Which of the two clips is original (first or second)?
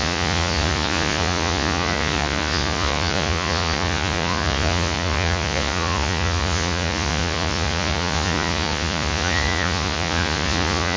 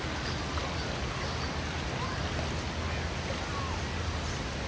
second